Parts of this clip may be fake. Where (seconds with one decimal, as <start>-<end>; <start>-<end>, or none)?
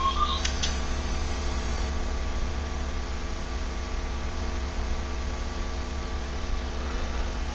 0.0-7.5